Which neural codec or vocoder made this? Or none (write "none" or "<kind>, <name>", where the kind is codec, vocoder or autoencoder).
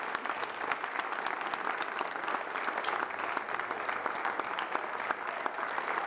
none